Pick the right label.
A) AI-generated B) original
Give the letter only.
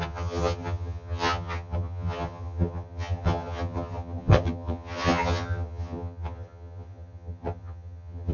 A